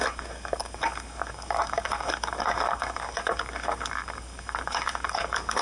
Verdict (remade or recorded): remade